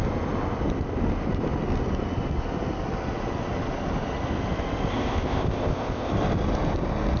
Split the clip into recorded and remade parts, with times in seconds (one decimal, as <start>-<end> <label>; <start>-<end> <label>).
0.0-4.9 recorded; 4.9-6.1 remade; 6.1-7.2 recorded